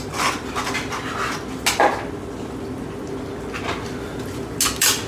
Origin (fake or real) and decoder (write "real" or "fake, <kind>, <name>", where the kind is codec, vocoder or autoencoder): real